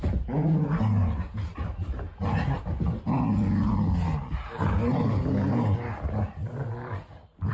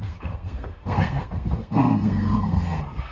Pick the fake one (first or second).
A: second